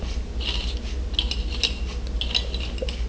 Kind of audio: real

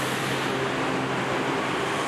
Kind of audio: real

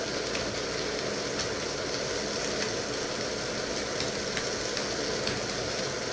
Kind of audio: real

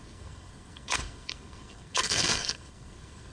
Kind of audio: fake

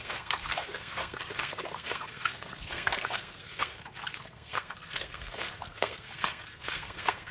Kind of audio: fake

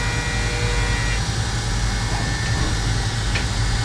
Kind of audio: real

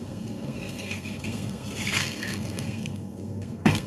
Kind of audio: fake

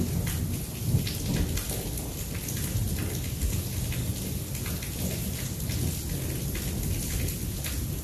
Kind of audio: real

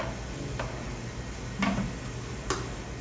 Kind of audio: real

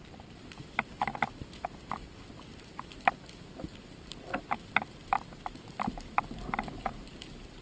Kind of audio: real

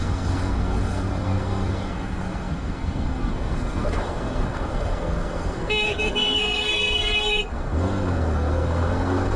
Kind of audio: fake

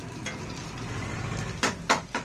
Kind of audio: real